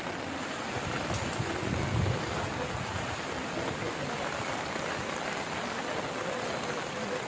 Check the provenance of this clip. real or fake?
real